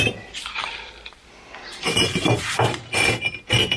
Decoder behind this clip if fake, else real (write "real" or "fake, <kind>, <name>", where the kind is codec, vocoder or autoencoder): real